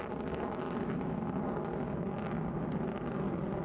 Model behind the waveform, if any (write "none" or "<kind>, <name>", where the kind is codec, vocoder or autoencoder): none